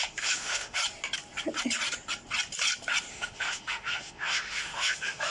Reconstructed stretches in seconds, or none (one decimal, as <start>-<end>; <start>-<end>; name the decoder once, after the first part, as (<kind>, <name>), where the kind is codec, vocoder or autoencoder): 0.0-0.8 (autoencoder, DAC-VAE); 3.1-5.3